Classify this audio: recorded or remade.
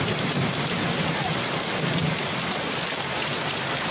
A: recorded